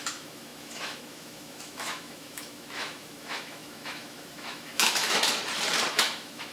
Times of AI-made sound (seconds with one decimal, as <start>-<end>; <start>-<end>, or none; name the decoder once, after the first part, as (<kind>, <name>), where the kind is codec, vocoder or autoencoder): 0.0-5.4 (autoencoder, DAC-VAE); 5.9-6.5

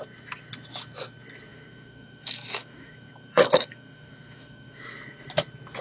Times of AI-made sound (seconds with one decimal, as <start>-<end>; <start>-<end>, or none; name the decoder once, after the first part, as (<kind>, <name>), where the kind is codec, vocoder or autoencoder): 1.5-4.9 (autoencoder, DAC-VAE)

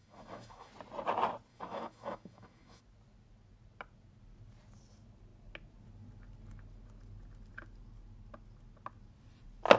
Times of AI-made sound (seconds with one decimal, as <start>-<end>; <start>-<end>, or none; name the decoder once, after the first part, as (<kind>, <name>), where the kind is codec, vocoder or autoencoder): 0.0-0.7 (autoencoder, DAC-VAE); 1.5-2.8